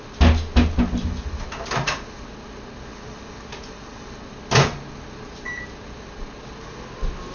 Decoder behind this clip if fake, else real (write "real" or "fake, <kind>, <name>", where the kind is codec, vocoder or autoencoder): real